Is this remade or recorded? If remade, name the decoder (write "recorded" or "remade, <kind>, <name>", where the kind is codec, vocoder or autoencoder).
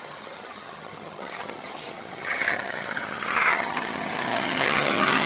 remade, vocoder, HiFi-GAN